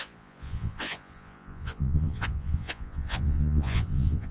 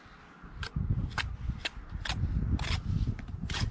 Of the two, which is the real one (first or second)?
second